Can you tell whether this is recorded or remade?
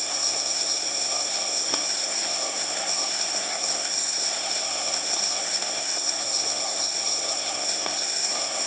remade